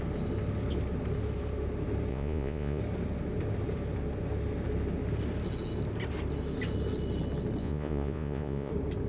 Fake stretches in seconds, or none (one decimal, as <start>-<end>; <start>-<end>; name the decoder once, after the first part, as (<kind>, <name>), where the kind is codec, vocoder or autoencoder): 2.1-2.8 (vocoder, Vocos); 7.6-8.7

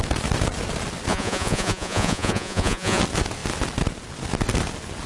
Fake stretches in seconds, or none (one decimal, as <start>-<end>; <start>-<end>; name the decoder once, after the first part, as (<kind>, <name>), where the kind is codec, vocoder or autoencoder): 1.1-3.0 (vocoder, Vocos)

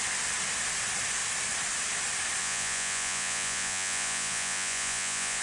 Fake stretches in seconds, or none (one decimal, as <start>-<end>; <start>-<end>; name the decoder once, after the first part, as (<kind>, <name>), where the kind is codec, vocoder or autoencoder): 2.4-5.4 (vocoder, Vocos)